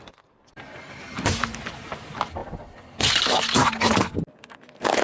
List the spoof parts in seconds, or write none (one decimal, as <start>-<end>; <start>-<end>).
none